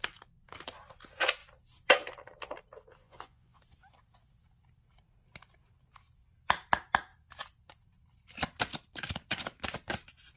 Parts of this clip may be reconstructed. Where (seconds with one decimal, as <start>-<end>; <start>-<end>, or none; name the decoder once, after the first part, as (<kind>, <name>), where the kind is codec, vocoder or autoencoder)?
3.0-3.6 (vocoder, Vocos)